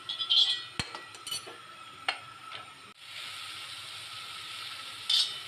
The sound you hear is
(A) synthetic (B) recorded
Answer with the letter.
B